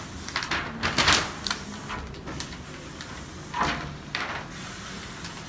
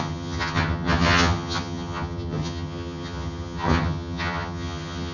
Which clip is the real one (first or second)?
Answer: first